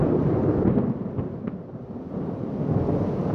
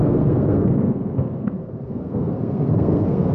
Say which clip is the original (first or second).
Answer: first